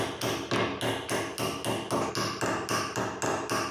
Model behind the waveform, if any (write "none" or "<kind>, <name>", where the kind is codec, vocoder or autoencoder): none